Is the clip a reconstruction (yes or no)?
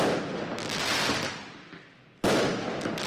no